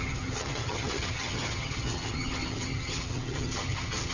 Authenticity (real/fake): fake